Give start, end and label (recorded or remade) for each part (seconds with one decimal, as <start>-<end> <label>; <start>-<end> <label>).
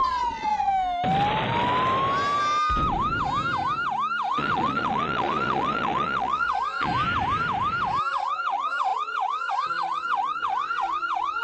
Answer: 0.0-0.7 remade; 0.7-4.3 recorded; 4.3-6.9 remade; 6.9-8.1 recorded; 8.1-11.4 remade